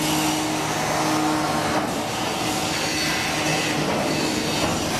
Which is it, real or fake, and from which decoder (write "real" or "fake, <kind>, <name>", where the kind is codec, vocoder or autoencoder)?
real